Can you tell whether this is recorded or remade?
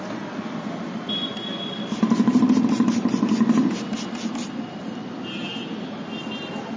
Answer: recorded